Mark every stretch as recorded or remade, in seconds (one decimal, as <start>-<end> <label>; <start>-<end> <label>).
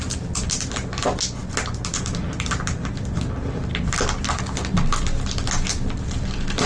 0.0-1.4 recorded; 1.4-3.2 remade; 3.2-3.7 recorded; 3.7-4.4 remade; 4.4-6.7 recorded